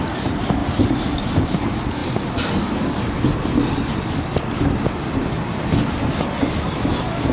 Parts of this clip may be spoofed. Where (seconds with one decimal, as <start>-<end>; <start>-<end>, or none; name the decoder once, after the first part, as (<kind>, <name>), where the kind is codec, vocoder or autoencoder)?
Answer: 0.6-1.4 (vocoder, BigVGAN v2)